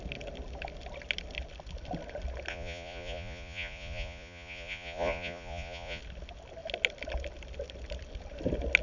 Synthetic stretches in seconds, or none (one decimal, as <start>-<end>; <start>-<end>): 2.5-6.0